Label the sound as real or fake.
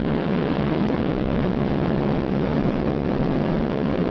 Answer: fake